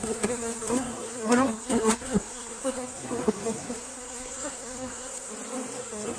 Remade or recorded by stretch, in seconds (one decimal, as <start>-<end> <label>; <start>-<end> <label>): 0.0-5.3 remade; 5.3-5.8 recorded; 5.8-6.2 remade